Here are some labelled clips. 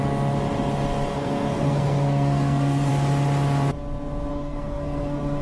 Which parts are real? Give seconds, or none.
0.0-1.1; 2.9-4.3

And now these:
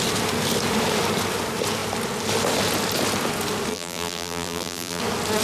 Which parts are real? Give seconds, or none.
0.0-3.7; 5.0-5.4

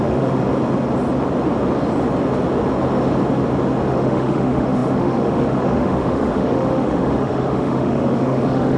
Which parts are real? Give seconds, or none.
0.4-3.9

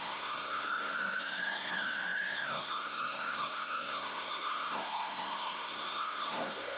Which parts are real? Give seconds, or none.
none

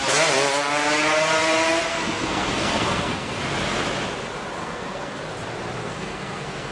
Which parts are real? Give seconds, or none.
0.0-1.9; 3.4-4.6; 5.2-5.8